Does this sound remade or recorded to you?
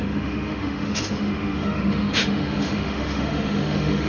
remade